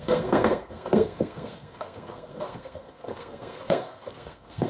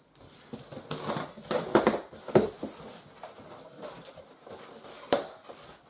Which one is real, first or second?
second